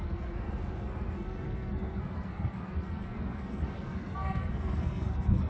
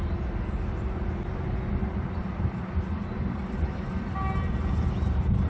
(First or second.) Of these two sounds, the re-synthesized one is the first